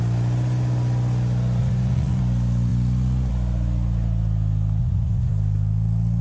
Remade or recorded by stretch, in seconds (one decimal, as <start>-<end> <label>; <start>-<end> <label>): 0.0-1.6 recorded; 1.6-2.2 remade; 2.2-4.8 recorded; 4.8-5.3 remade; 5.3-6.2 recorded